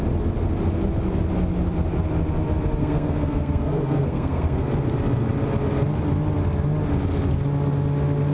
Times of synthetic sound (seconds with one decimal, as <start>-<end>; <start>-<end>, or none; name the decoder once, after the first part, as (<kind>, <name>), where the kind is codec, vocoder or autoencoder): 2.8-4.6 (codec, SNAC)